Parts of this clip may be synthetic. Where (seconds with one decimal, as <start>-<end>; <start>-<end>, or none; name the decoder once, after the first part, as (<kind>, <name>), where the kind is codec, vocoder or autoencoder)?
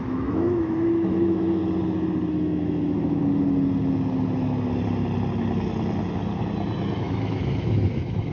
0.0-1.6 (autoencoder, DAC-VAE); 2.3-3.2; 7.0-8.3